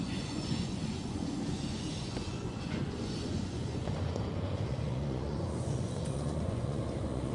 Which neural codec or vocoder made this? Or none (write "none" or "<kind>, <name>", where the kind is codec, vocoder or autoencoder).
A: vocoder, Vocos